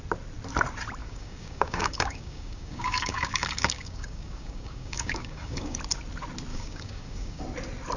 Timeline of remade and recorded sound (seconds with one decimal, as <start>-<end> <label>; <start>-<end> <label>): 0.0-1.0 recorded; 1.0-5.8 remade; 5.8-6.5 recorded; 6.5-7.4 remade; 7.4-8.0 recorded